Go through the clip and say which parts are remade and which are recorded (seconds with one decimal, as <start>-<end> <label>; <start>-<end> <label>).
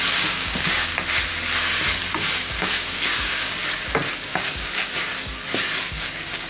0.0-0.9 remade; 0.9-2.1 recorded; 2.1-3.6 remade; 3.6-4.3 recorded; 4.3-5.1 remade; 5.1-5.8 recorded; 5.8-6.5 remade